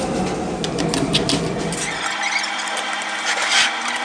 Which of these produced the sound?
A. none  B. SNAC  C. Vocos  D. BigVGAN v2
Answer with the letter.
A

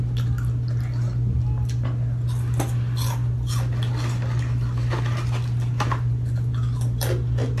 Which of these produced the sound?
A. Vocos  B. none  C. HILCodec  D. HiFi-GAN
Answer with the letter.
B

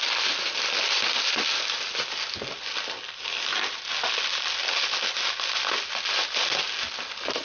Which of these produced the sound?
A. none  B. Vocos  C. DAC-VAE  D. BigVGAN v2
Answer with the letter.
A